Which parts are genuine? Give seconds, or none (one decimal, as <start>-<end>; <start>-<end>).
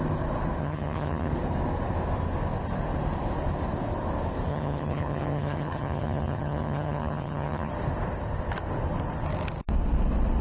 0.0-0.6; 1.3-4.5; 7.7-10.4